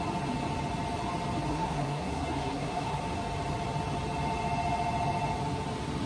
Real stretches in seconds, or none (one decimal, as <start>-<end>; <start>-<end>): 0.0-1.5; 3.0-6.1

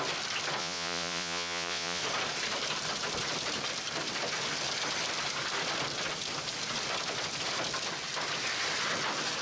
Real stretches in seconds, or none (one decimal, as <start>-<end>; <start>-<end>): 0.0-0.6; 2.0-9.4